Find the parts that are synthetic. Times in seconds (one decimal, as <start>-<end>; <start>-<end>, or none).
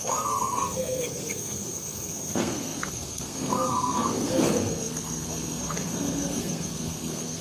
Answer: 0.0-7.4